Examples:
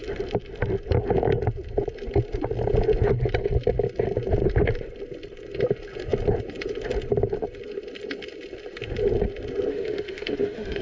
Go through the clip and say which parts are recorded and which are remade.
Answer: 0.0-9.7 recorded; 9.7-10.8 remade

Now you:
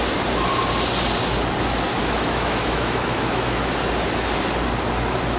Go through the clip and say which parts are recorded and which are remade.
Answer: 0.0-2.0 recorded; 2.0-3.7 remade; 3.7-5.4 recorded

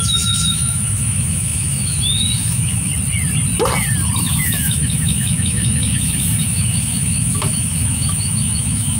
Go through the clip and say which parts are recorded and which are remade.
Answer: 0.0-2.9 remade; 2.9-4.2 recorded; 4.2-9.0 remade

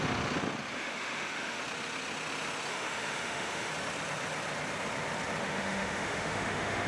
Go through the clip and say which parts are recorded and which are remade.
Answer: 0.0-0.7 recorded; 0.7-1.6 remade; 1.6-2.7 recorded; 2.7-3.7 remade; 3.7-5.4 recorded; 5.4-6.9 remade

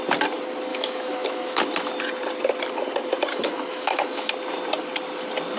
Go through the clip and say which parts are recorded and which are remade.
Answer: 0.0-0.7 recorded; 0.7-1.6 remade; 1.6-3.3 recorded; 3.3-4.3 remade; 4.3-5.6 recorded

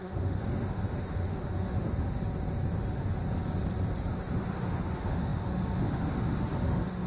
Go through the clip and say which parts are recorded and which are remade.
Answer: 0.0-2.2 remade; 2.2-2.8 recorded; 2.8-3.2 remade; 3.2-4.0 recorded; 4.0-7.1 remade